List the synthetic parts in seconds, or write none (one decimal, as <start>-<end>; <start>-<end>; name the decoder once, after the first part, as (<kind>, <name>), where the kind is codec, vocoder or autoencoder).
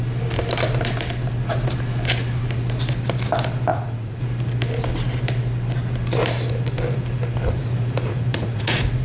3.7-4.2 (vocoder, Vocos); 7.6-9.0